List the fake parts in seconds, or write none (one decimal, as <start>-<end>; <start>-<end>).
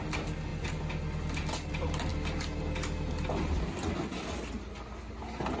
none